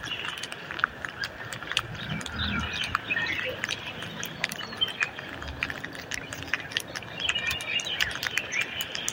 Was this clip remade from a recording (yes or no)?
yes